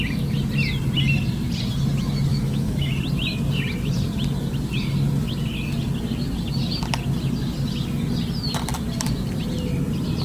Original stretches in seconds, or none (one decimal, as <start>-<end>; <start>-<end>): 0.0-2.3; 2.9-10.2